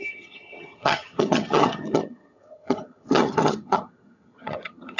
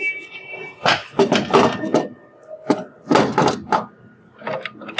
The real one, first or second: second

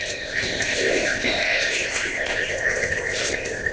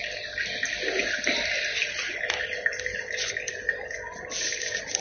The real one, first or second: second